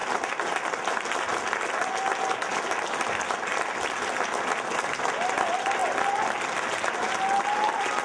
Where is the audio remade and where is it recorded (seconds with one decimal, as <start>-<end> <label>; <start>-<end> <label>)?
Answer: 0.0-8.0 recorded